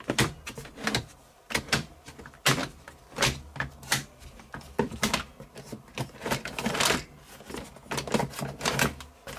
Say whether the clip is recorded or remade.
recorded